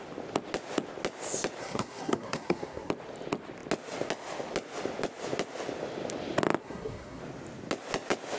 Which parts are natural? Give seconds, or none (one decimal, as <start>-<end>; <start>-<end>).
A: 0.0-1.6; 2.9-6.6; 7.2-8.4